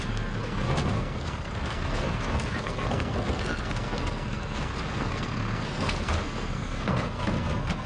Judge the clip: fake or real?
fake